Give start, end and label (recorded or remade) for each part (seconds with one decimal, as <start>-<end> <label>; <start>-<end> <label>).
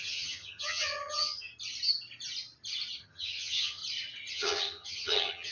0.0-1.5 remade; 1.5-3.0 recorded; 3.0-3.8 remade; 3.8-4.3 recorded; 4.3-5.5 remade